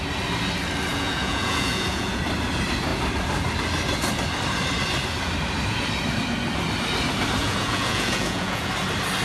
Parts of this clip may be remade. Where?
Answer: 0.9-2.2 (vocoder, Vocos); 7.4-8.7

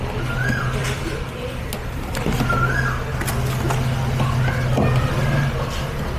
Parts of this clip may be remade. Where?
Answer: none

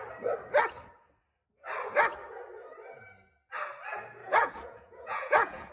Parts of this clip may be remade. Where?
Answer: 4.2-5.7 (vocoder, Vocos)